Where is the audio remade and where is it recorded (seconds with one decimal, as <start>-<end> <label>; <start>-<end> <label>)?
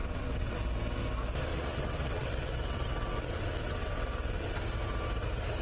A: 0.0-0.6 remade; 0.6-1.5 recorded; 1.5-4.6 remade; 4.6-5.6 recorded